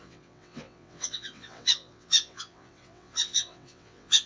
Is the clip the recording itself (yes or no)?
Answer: no